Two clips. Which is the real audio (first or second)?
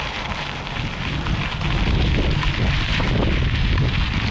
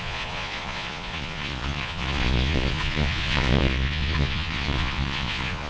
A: first